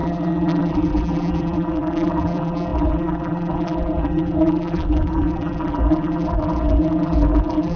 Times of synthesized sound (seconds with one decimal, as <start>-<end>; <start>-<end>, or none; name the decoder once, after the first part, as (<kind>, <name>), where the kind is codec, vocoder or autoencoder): 0.0-7.8 (vocoder, BigVGAN v2)